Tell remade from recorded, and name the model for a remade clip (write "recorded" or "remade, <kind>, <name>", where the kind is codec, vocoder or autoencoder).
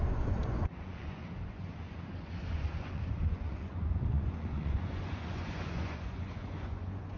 remade, vocoder, Vocos